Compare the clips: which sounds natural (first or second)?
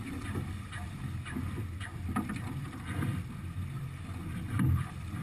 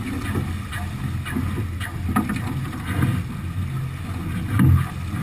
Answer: second